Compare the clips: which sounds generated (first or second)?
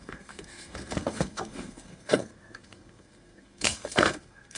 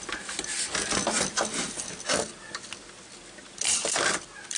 first